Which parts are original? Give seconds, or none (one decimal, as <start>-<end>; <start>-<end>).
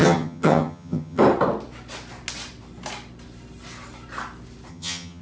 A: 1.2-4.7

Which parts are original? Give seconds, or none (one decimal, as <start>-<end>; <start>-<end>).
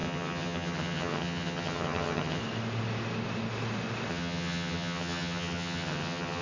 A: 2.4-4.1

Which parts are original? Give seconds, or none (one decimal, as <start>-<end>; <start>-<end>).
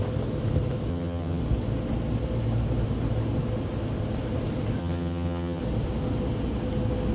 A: 0.0-0.9; 1.4-4.8; 5.6-7.1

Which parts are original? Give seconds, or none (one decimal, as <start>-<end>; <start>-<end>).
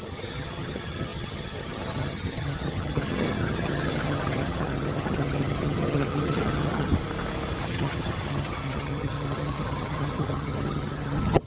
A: 6.9-7.6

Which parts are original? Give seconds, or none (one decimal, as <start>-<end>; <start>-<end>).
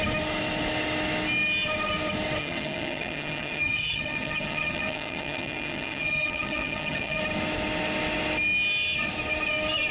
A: 0.0-2.4; 7.2-9.9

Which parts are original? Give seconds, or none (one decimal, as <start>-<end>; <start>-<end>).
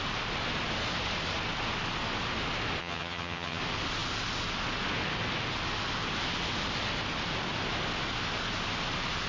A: 0.0-2.8; 3.6-9.3